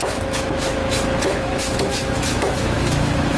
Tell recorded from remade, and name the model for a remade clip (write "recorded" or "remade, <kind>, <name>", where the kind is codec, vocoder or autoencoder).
remade, autoencoder, DAC-VAE